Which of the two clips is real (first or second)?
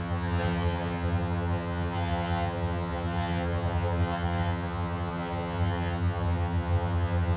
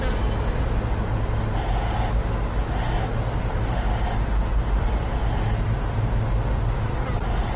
second